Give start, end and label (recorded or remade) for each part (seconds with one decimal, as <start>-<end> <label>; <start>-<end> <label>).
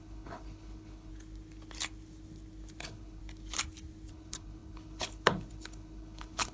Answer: 0.0-1.1 remade; 1.1-2.8 recorded; 2.8-3.2 remade; 3.2-4.1 recorded; 4.1-6.5 remade